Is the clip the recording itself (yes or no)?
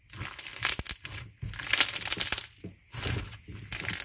yes